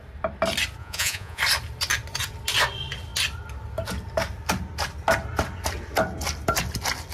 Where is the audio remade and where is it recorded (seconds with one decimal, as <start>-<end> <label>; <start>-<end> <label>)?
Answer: 0.0-0.8 recorded; 0.8-1.4 remade; 1.4-7.1 recorded